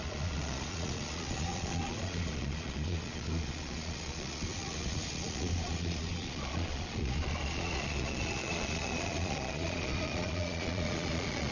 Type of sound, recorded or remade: remade